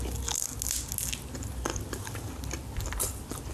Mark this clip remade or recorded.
recorded